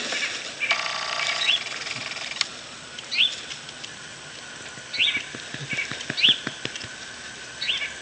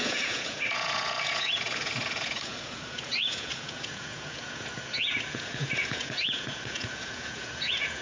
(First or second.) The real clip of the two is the first